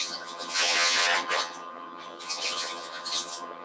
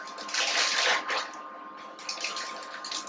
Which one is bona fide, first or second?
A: second